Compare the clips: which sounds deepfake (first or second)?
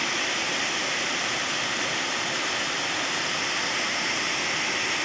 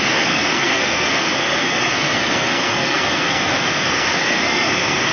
second